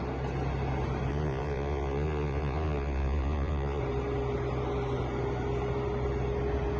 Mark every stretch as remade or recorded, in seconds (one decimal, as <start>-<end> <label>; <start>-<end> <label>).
0.0-1.1 recorded; 1.1-3.8 remade; 3.8-6.8 recorded